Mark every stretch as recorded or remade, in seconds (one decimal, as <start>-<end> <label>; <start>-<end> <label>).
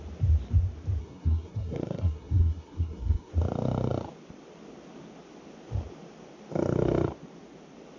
0.0-1.0 recorded; 1.0-3.3 remade; 3.3-8.0 recorded